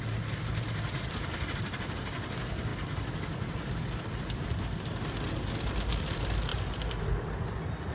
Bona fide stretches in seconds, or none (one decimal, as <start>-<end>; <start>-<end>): 0.0-7.9